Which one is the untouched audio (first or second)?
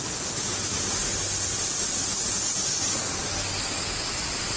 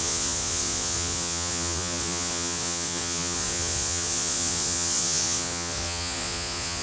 first